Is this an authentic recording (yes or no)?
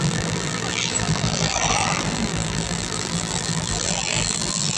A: no